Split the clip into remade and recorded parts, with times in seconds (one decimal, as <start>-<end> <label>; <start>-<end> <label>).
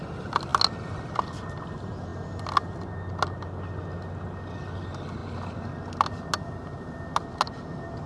0.0-8.1 recorded